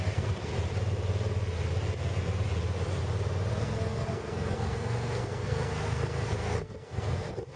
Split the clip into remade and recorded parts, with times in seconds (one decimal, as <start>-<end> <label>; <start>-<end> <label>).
0.0-0.5 remade; 0.5-3.6 recorded; 3.6-7.6 remade

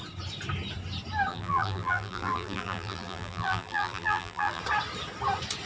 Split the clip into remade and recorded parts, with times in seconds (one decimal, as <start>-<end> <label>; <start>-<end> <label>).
0.0-1.3 recorded; 1.3-4.6 remade; 4.6-5.7 recorded